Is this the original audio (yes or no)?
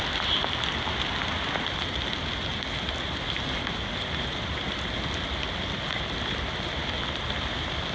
yes